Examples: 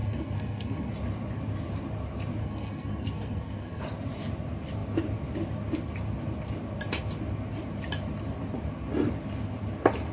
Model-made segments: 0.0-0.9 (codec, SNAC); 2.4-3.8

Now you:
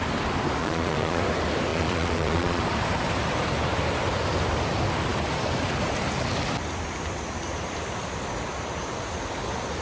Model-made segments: 0.6-1.2 (vocoder, Vocos); 1.7-2.6

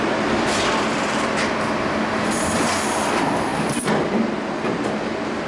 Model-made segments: none